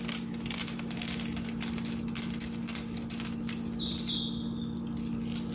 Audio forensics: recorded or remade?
recorded